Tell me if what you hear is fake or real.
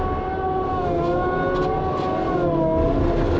real